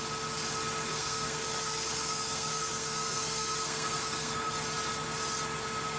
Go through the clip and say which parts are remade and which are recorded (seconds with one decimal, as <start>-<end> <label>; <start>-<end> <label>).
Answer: 0.0-0.9 recorded; 0.9-4.5 remade; 4.5-6.0 recorded